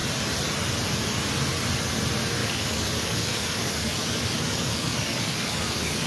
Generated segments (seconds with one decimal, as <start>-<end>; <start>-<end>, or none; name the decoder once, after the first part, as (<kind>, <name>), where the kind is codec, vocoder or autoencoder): 2.4-6.1 (codec, DAC)